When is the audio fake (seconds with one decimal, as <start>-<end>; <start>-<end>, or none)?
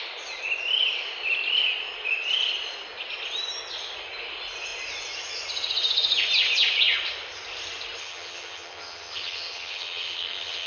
8.0-10.7